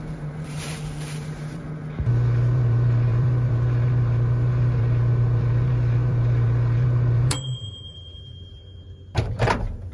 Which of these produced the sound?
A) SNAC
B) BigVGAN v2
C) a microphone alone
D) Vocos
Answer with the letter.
B